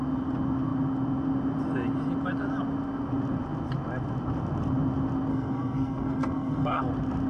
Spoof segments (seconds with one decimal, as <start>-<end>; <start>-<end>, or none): 5.3-6.8